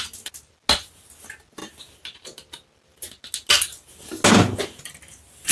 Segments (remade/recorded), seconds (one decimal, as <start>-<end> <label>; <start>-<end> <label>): 0.0-5.5 recorded